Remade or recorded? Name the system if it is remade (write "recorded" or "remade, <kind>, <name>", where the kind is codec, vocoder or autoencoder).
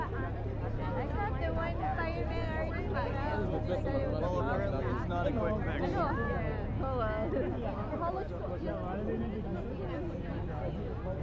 recorded